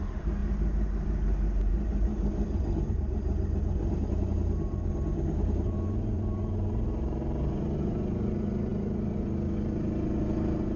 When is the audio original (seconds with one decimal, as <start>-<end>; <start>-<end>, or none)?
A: 0.4-1.7